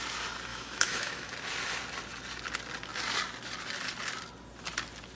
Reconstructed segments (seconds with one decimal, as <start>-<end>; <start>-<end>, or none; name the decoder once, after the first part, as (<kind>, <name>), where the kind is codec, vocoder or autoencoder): 0.5-1.3 (autoencoder, DAC-VAE)